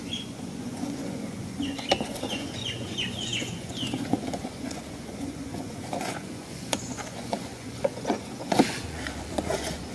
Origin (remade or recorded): remade